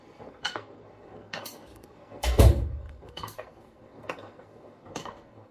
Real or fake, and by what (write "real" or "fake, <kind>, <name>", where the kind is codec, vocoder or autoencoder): fake, codec, SNAC